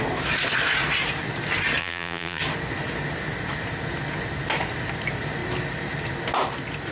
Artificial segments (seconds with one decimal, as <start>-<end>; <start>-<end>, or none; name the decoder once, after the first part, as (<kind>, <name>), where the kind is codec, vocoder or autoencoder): 1.8-2.4 (vocoder, BigVGAN v2)